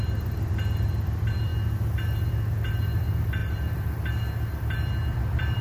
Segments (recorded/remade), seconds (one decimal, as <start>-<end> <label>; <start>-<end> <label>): 0.0-3.4 recorded; 3.4-4.1 remade; 4.1-5.6 recorded

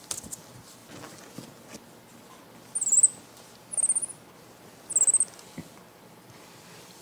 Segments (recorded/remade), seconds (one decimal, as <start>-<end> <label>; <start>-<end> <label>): 0.0-7.0 recorded

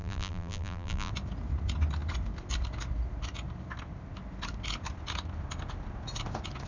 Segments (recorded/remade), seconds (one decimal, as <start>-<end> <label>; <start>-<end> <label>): 0.0-1.1 remade; 1.1-6.7 recorded